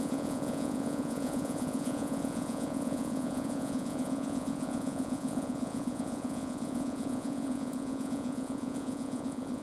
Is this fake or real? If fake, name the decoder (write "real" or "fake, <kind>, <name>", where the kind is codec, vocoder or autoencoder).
fake, vocoder, Vocos